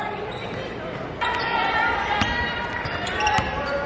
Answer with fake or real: fake